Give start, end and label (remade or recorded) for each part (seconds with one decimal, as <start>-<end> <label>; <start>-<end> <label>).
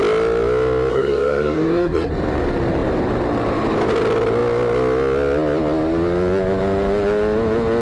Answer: 0.0-0.9 recorded; 0.9-2.1 remade; 2.1-7.8 recorded